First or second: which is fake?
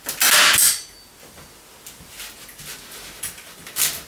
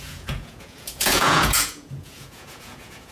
second